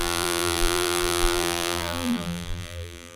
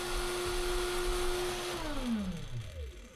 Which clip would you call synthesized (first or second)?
first